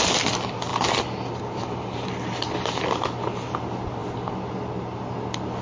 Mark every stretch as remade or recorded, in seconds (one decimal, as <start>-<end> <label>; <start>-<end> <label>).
0.0-5.6 recorded